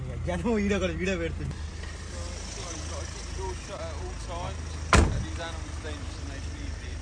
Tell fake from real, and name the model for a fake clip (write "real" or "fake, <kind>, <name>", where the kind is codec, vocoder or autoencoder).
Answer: real